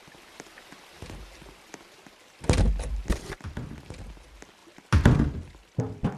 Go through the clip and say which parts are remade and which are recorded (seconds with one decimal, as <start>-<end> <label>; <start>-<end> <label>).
0.0-6.2 recorded